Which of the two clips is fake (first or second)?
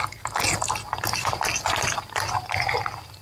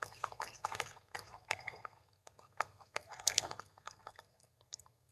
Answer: second